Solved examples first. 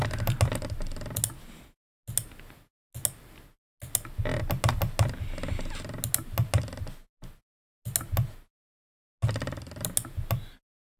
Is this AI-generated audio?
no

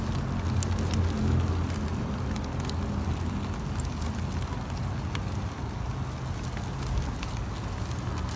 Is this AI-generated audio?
no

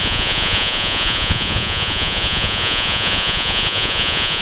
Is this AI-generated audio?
yes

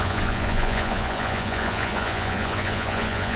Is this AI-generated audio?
yes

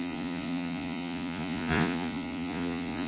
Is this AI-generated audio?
yes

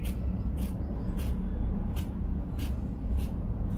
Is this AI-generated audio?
yes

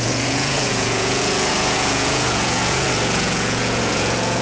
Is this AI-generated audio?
yes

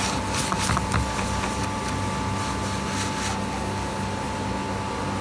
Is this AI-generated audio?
no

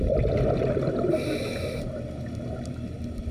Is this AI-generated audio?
no